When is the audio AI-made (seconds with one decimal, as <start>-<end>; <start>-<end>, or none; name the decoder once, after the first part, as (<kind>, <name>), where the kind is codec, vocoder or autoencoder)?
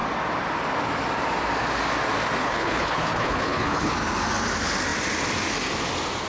2.4-3.9 (codec, HILCodec)